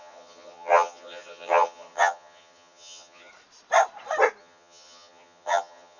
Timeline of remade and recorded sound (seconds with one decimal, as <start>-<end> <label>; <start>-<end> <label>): 0.0-3.3 remade; 3.3-4.4 recorded; 4.4-6.0 remade